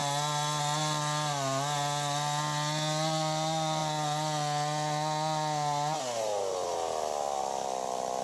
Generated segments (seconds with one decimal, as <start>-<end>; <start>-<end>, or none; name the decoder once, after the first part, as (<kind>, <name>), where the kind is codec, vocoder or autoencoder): none